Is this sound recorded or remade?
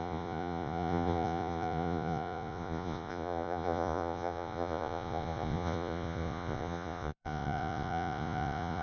remade